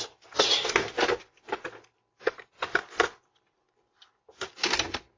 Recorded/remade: recorded